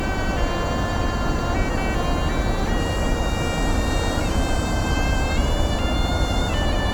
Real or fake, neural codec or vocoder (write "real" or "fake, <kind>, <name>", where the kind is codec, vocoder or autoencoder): real